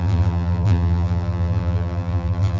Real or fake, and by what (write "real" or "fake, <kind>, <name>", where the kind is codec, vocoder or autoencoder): fake, vocoder, BigVGAN v2